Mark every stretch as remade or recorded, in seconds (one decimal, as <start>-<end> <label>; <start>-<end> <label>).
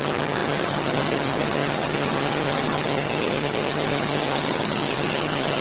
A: 0.0-5.6 remade